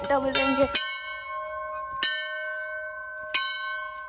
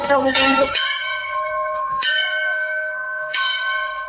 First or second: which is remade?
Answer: second